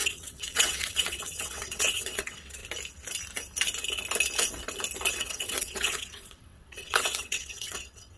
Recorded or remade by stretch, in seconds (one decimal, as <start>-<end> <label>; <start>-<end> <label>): 0.0-2.6 remade; 2.6-5.1 recorded; 5.1-8.2 remade